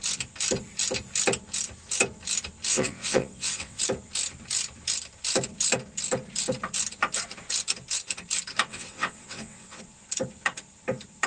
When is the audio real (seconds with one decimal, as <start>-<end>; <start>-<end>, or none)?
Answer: 0.0-2.7; 3.8-8.7; 9.8-11.3